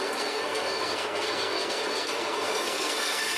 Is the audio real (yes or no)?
no